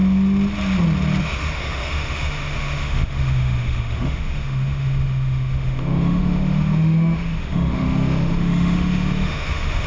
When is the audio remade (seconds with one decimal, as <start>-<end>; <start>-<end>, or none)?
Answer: 1.2-9.9